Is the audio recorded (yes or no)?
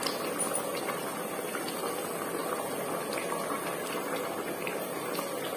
yes